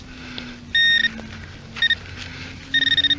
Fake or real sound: real